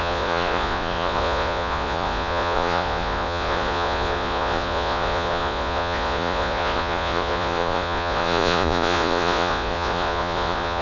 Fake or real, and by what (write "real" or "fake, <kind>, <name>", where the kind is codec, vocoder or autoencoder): fake, vocoder, Vocos